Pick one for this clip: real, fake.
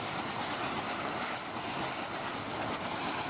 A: real